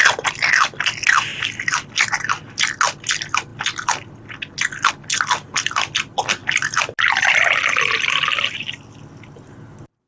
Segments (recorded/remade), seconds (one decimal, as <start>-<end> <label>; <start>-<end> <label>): 0.0-10.1 recorded